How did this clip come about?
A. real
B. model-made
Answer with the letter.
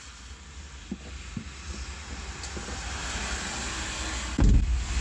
A